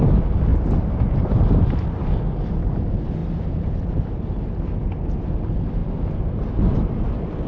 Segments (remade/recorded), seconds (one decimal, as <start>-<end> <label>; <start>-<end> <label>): 0.0-7.5 recorded